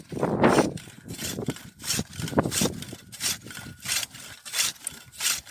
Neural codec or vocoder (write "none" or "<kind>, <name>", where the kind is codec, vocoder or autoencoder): none